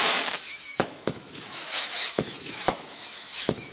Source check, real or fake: fake